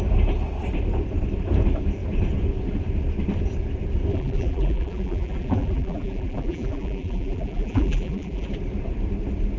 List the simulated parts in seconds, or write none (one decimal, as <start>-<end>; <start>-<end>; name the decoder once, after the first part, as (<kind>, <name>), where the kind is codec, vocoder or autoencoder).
4.1-8.5 (vocoder, BigVGAN v2)